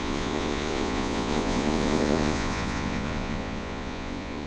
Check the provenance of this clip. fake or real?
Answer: fake